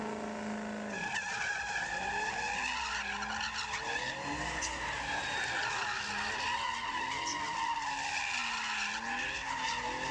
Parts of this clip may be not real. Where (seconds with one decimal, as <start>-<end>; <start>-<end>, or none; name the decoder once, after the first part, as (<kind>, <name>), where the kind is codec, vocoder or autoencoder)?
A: none